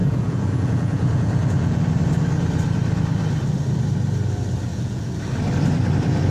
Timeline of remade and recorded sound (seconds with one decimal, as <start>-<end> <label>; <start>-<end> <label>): 0.0-1.9 remade; 1.9-4.7 recorded; 4.7-5.2 remade; 5.2-6.3 recorded